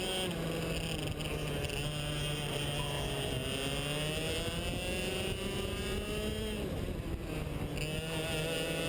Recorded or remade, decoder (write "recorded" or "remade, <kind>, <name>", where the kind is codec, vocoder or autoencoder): recorded